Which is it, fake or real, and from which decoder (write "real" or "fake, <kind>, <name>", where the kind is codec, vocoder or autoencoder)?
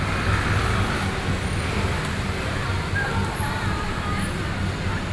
real